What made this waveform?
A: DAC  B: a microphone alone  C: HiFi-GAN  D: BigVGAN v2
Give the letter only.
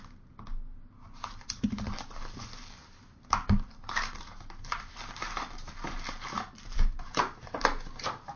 B